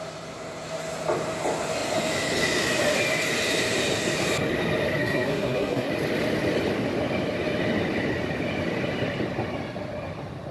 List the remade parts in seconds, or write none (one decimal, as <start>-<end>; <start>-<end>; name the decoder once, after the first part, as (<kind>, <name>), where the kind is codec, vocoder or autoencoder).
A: 5.0-5.9 (codec, SNAC)